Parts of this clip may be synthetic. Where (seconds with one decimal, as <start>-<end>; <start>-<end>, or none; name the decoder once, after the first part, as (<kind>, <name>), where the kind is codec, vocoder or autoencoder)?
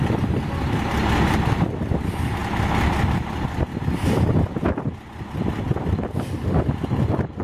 none